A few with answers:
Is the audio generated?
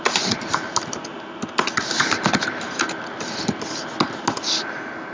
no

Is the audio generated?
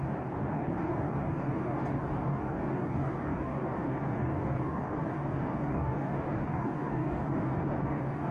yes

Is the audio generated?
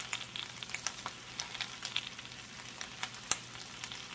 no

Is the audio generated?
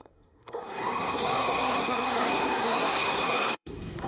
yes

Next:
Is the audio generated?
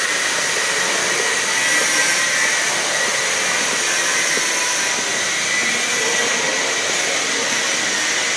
no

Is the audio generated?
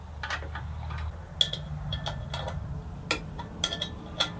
no